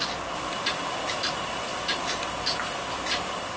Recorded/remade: recorded